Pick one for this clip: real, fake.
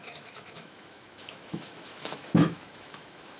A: fake